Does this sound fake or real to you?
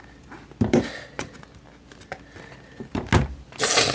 real